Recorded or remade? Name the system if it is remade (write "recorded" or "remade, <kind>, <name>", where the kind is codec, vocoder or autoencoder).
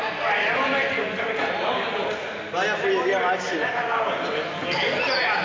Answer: recorded